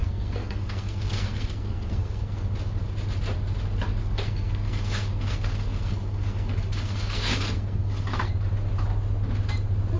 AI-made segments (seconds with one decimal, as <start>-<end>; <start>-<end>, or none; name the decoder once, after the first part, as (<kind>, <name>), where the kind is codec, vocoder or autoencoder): 0.0-2.5 (codec, SNAC); 4.0-8.3